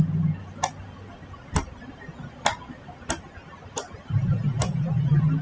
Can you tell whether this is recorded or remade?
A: recorded